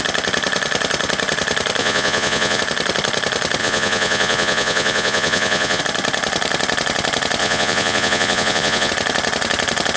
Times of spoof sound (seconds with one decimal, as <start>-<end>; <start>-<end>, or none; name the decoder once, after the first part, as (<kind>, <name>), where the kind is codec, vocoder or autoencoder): 1.8-2.6 (vocoder, Vocos); 3.6-5.8; 7.4-8.9

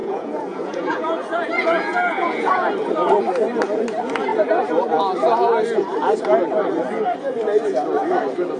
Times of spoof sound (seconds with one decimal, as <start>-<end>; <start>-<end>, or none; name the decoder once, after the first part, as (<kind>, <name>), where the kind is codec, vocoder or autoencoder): 0.0-2.7 (vocoder, Vocos)